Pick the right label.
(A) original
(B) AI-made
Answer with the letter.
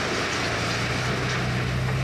A